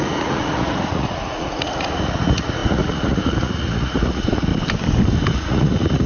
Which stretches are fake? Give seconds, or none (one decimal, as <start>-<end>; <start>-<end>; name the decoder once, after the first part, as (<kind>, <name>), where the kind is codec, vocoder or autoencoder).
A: 0.0-4.5 (vocoder, Vocos); 5.3-6.1